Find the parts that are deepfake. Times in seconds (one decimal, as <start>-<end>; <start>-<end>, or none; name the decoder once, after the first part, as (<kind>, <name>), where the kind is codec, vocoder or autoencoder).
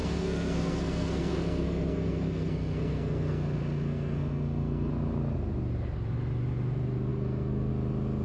0.0-4.9 (codec, SNAC); 7.1-7.7